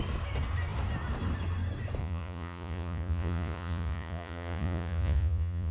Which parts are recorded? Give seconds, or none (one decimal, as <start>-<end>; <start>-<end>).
0.0-2.0